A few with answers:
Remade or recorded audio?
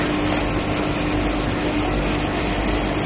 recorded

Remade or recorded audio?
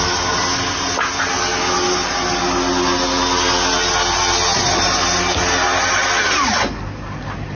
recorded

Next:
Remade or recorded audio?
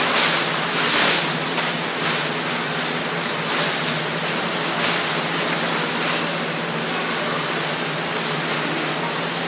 recorded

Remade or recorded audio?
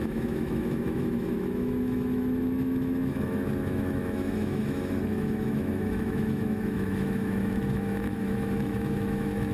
remade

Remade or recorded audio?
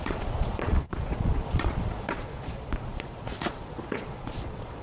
remade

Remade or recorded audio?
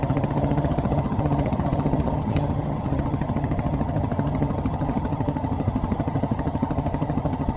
remade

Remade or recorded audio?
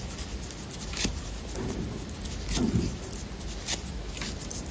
recorded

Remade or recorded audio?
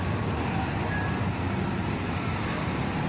recorded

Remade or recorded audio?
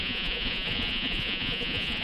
remade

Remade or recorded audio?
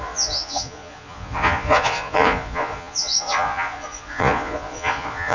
remade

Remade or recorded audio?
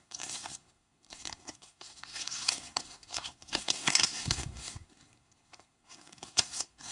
remade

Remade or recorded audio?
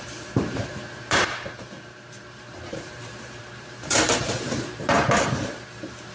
remade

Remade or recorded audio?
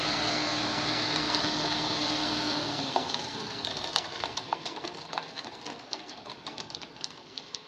remade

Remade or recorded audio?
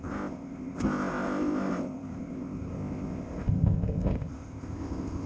remade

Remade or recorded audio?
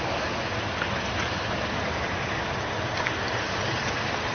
recorded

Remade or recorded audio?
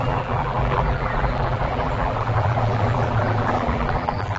remade